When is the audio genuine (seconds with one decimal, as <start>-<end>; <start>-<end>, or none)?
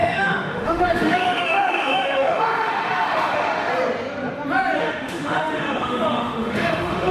3.7-4.8